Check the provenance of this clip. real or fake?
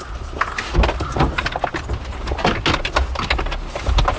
real